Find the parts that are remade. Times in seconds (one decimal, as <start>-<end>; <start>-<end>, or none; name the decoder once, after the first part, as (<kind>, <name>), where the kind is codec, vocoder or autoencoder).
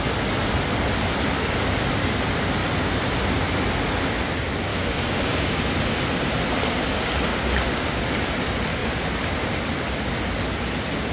4.7-5.6 (codec, DAC); 7.3-8.0